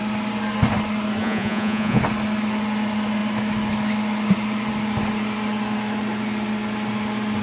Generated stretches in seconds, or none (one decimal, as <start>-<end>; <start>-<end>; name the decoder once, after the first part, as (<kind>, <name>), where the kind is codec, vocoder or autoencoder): 1.2-2.0 (vocoder, Vocos)